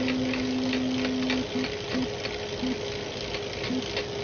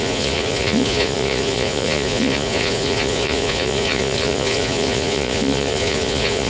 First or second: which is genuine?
first